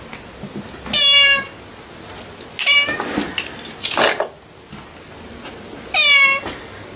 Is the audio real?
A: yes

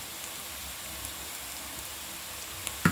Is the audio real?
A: yes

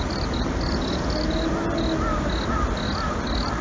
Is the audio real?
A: yes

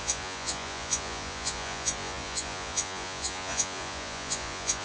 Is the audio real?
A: no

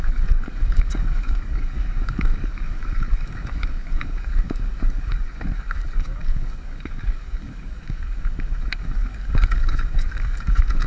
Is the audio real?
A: no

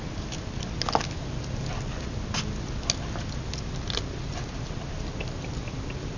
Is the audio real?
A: yes